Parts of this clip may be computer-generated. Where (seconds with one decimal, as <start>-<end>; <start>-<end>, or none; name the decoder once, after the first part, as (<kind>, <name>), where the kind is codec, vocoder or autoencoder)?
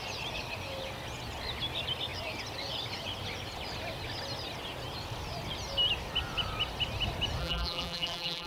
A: 7.4-8.5 (vocoder, BigVGAN v2)